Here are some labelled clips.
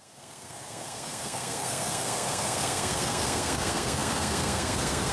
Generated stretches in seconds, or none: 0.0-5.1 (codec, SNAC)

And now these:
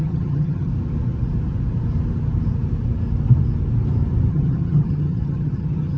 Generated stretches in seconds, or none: 0.0-0.7 (vocoder, HiFi-GAN); 4.3-6.0

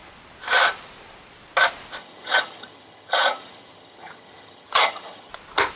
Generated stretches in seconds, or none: 2.0-5.3 (vocoder, HiFi-GAN)

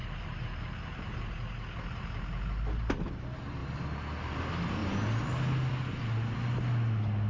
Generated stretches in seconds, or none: none

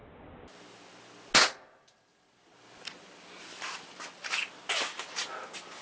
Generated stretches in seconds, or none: none